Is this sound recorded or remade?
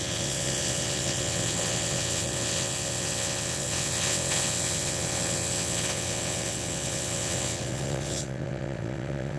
remade